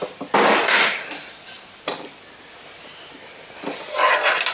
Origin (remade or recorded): recorded